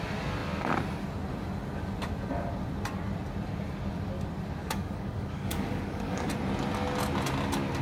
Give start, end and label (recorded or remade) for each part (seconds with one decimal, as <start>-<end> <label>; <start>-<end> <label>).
0.0-4.6 recorded; 4.6-6.3 remade; 6.3-7.8 recorded